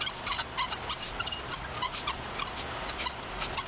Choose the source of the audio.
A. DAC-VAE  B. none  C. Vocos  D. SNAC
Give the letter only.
B